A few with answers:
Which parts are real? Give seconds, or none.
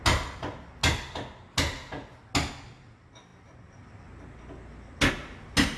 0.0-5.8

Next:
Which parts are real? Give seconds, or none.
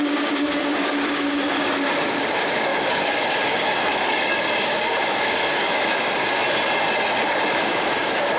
6.4-7.6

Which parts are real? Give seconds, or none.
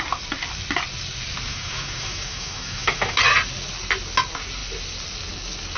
0.0-1.5; 3.2-5.8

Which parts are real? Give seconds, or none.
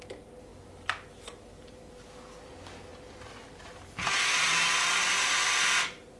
0.0-6.2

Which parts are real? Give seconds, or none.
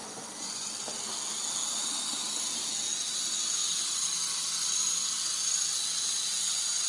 0.7-6.9